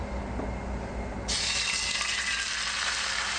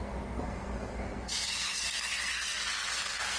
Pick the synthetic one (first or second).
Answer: second